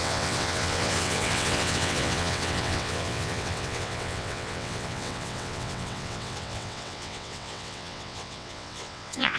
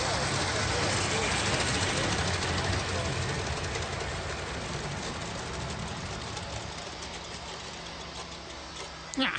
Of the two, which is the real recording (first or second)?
second